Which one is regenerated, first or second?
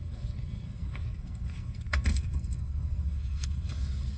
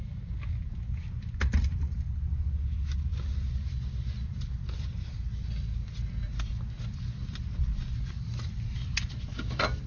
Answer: first